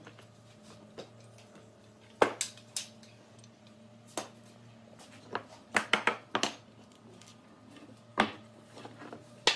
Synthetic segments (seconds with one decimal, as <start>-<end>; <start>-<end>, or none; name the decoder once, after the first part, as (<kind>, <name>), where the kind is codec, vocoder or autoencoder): none